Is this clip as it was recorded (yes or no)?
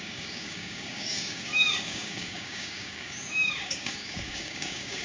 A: no